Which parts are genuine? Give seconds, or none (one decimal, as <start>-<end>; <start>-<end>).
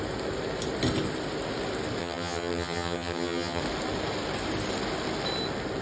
0.0-2.0; 3.6-5.8